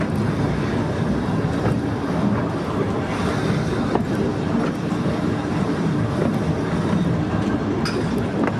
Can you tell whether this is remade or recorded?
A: recorded